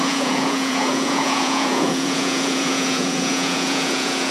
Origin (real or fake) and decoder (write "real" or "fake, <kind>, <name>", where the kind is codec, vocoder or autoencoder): fake, vocoder, Vocos